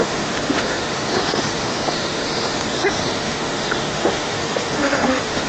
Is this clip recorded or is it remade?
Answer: remade